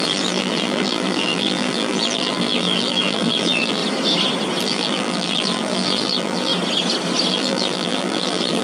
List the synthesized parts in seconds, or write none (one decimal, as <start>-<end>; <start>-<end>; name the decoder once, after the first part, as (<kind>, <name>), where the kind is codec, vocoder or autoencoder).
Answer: 0.0-3.8 (vocoder, BigVGAN v2); 4.6-6.5; 7.3-8.6